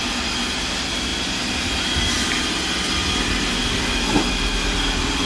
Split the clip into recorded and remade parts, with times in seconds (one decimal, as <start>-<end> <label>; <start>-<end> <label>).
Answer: 0.0-5.3 recorded